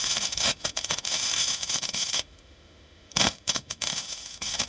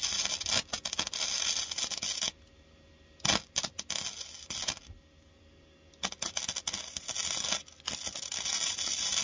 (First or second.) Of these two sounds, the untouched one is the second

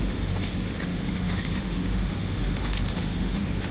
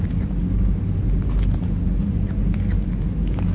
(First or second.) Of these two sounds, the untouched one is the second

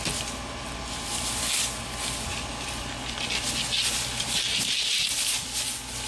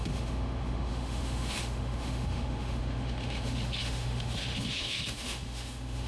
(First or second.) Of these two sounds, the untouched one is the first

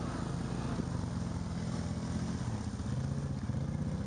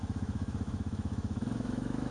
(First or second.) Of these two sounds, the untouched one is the first